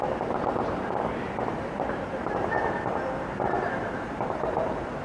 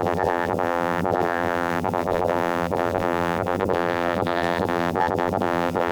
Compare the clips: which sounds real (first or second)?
first